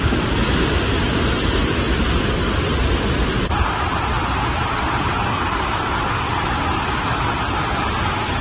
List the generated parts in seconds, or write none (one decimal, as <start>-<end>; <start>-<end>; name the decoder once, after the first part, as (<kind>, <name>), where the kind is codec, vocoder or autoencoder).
none